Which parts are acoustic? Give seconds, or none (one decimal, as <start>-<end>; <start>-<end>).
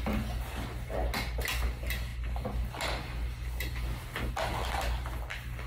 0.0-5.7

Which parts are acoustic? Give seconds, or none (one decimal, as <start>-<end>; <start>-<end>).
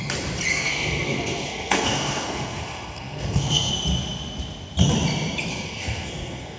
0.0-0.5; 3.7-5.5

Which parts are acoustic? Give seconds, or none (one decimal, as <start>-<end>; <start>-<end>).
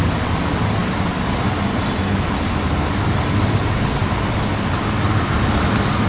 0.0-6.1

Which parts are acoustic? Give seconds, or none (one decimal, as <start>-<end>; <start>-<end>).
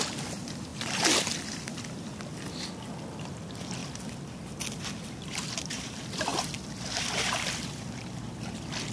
0.0-0.7; 2.8-6.3; 8.0-8.9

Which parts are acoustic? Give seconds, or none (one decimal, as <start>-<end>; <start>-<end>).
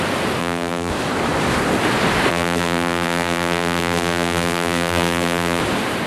0.0-0.4; 0.9-2.3; 5.6-6.1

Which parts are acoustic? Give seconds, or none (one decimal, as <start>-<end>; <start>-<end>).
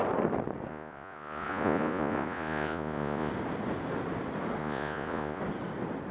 0.0-0.7; 3.3-4.6; 5.4-6.1